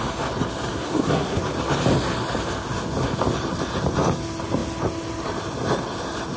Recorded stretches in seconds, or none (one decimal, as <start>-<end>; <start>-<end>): 0.0-0.7; 1.4-6.4